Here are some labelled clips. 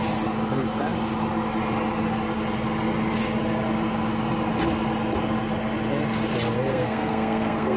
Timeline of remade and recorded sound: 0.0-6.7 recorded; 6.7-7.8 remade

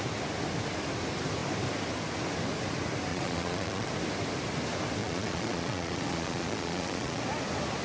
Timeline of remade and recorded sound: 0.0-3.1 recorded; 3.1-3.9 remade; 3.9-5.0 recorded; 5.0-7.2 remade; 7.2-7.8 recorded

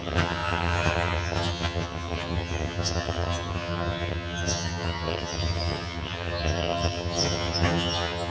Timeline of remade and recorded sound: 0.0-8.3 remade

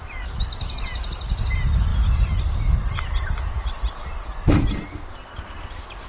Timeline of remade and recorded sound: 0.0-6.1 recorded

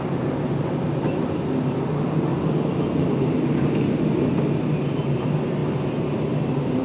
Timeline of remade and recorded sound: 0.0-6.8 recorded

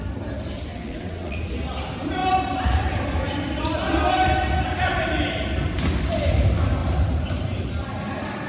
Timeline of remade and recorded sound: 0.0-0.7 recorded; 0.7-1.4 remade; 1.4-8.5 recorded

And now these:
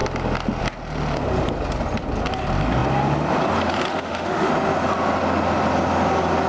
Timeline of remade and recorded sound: 0.0-3.9 recorded; 3.9-4.5 remade; 4.5-6.5 recorded